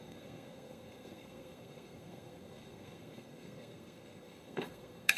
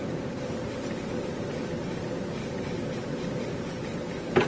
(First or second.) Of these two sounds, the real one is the second